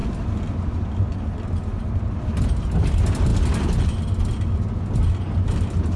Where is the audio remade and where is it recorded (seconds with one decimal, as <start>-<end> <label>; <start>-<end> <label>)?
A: 0.0-6.0 recorded